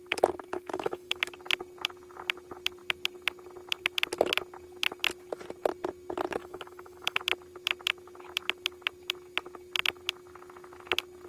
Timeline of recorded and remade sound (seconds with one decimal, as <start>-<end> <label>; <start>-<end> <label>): 0.0-0.5 recorded; 0.5-1.3 remade; 1.3-6.4 recorded; 6.4-7.2 remade; 7.2-11.3 recorded